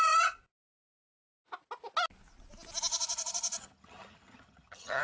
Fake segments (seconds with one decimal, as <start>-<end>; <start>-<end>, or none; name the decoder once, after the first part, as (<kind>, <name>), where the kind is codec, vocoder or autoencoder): 2.9-5.0 (vocoder, HiFi-GAN)